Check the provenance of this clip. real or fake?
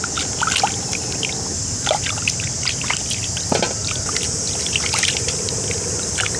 real